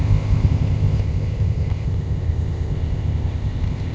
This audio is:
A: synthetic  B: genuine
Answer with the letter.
A